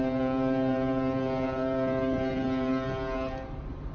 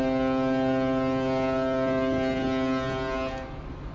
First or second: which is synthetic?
first